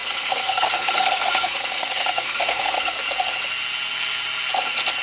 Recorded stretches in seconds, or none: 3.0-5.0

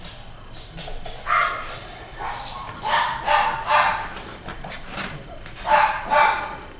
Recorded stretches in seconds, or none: 0.0-6.8

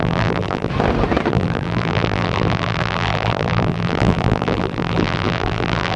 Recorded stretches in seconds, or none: 0.7-1.3

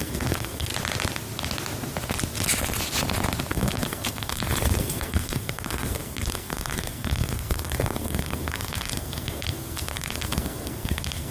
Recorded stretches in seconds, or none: 0.7-3.5

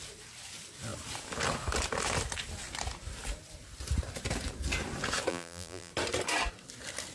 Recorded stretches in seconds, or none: 0.0-5.3; 5.9-7.1

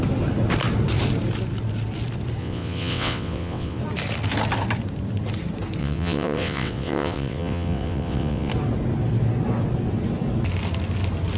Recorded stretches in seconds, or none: 0.0-2.4; 3.8-5.8; 8.5-11.4

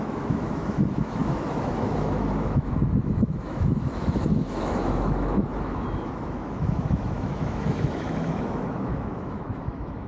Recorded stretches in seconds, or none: none